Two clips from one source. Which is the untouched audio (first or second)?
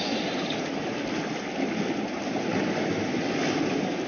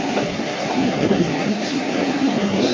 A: first